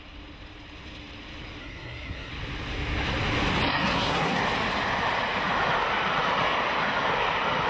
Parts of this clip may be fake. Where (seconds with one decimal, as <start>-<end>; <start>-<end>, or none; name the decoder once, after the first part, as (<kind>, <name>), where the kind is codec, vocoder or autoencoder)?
1.6-2.3 (codec, SNAC); 3.7-4.4

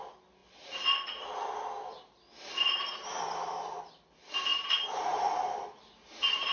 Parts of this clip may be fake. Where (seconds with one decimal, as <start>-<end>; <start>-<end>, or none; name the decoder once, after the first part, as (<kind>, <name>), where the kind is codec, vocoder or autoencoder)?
4.5-5.8 (vocoder, BigVGAN v2)

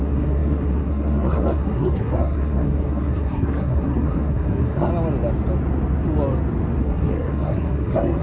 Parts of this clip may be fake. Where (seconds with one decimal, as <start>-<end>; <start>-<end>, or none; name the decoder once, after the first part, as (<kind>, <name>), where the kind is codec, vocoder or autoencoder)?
0.0-4.9 (codec, SNAC); 6.8-8.2

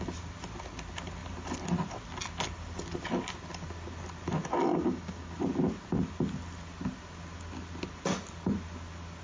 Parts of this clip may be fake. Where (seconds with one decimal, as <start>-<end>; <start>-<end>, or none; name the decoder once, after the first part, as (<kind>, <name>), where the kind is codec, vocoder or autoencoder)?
4.7-5.3 (codec, DAC)